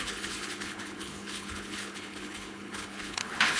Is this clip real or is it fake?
fake